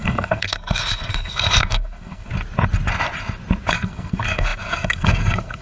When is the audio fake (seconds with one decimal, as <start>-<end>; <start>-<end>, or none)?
0.0-2.3; 3.7-5.6